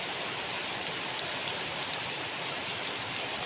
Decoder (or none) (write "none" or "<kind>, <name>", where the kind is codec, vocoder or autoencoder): none